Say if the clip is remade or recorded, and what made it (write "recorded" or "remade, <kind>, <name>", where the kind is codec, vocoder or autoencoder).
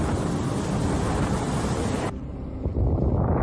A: recorded